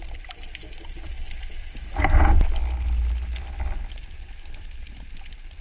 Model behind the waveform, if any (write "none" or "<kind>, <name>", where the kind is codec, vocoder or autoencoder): none